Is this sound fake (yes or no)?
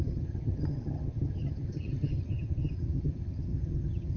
yes